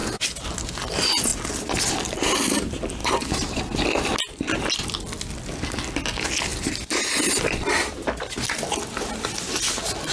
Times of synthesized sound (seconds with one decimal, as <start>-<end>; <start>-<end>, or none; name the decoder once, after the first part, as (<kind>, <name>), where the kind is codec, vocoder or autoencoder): 3.0-3.6 (vocoder, BigVGAN v2)